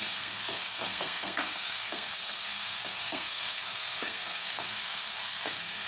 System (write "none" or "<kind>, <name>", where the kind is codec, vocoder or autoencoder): codec, SNAC